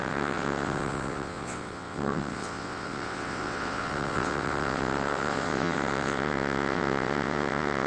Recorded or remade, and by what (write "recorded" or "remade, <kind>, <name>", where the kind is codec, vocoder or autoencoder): remade, vocoder, WaveNeXt